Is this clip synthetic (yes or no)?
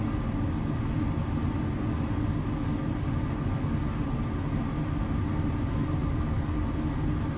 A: no